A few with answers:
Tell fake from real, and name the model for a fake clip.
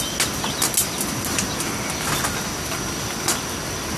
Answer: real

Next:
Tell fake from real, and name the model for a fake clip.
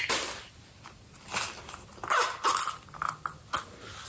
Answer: real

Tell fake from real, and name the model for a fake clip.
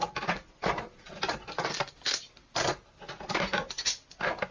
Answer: real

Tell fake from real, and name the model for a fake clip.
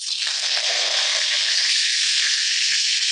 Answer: fake, codec, SNAC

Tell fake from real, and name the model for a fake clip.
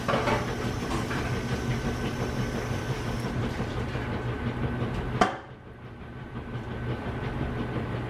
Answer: real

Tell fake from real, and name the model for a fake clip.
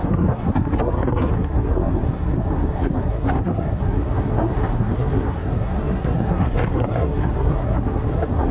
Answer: fake, codec, SNAC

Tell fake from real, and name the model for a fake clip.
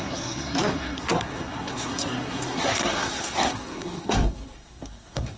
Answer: fake, codec, SNAC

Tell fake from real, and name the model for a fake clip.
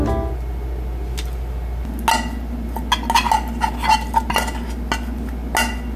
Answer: real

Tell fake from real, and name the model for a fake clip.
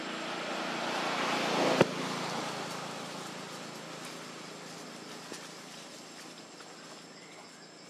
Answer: real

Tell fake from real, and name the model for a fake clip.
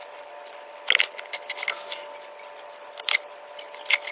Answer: real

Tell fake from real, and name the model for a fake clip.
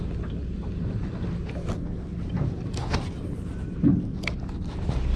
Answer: real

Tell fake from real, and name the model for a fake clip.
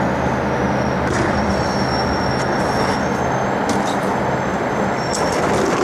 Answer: real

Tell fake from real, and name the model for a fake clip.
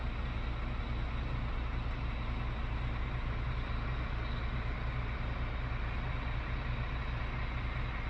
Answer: real